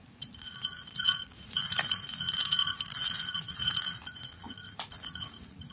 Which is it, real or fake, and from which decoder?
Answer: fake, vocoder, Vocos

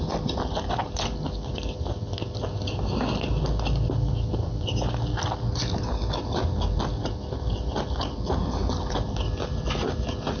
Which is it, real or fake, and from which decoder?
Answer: real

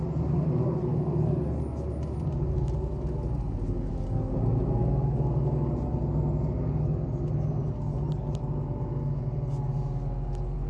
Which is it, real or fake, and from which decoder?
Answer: real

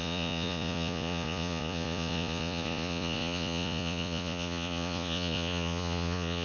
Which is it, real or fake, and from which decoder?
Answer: fake, vocoder, Vocos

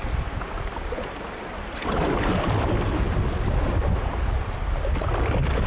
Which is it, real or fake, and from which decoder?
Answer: real